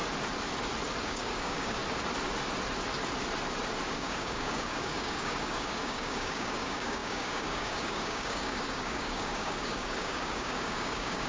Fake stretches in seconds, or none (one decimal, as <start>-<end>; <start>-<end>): 1.0-1.8; 3.9-11.3